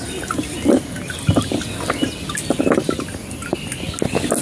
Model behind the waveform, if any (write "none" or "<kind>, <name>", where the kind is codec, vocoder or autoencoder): none